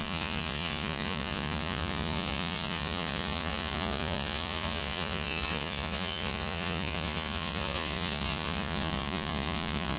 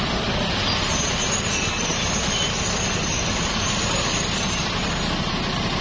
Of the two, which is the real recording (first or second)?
second